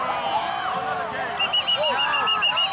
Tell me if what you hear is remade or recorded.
recorded